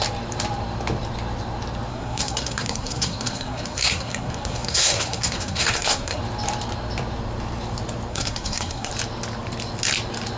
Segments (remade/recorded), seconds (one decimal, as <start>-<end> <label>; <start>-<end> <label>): 0.0-1.9 recorded; 1.9-6.2 remade; 6.2-8.1 recorded; 8.1-8.9 remade; 8.9-10.4 recorded